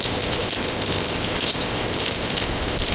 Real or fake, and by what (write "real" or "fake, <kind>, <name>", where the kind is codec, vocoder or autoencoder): fake, codec, ZipCodec